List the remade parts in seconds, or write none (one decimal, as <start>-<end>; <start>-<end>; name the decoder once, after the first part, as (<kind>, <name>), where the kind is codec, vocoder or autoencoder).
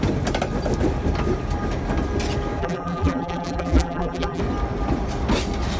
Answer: 2.6-4.4 (vocoder, BigVGAN v2)